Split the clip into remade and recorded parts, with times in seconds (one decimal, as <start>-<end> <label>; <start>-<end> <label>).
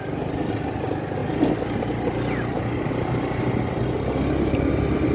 0.0-5.1 recorded